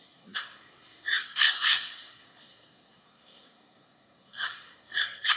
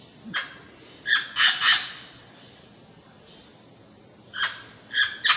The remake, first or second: first